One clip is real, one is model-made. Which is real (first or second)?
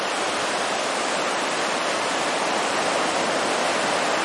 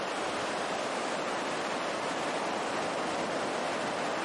second